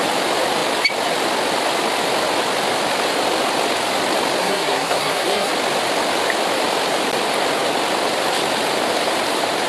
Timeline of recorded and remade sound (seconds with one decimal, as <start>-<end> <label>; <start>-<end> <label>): 0.0-4.4 recorded; 4.4-5.5 remade; 5.5-9.7 recorded